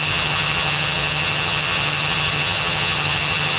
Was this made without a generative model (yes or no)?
no